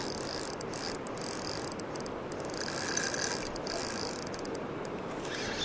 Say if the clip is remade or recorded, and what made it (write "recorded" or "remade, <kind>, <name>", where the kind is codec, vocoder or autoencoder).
recorded